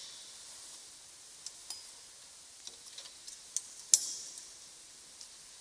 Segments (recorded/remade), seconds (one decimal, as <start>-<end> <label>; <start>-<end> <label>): 0.0-5.6 recorded